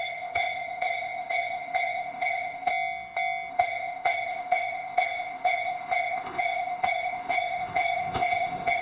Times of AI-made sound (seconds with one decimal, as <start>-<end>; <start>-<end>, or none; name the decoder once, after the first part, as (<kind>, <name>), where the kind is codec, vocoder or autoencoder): 0.0-2.7 (codec, ZipCodec); 3.5-8.8